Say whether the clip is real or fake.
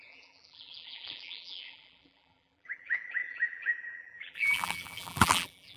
fake